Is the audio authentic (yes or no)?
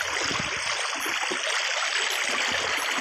yes